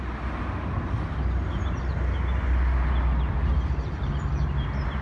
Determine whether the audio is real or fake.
real